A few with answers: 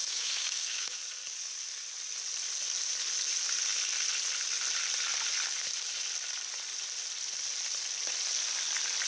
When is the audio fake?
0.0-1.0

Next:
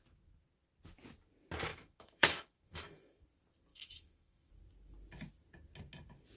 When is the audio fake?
1.7-3.2; 3.7-4.5

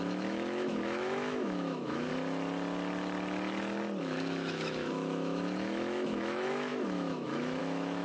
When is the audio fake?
0.0-2.1; 4.0-8.0

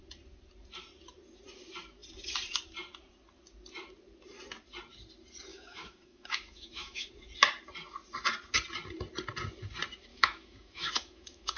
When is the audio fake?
5.5-7.1; 10.1-11.6

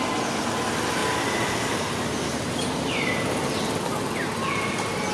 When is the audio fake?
none